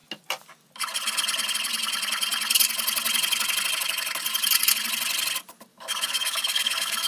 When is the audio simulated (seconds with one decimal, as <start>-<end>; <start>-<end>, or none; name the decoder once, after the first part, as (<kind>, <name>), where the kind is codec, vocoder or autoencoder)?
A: 5.7-7.1 (codec, DAC)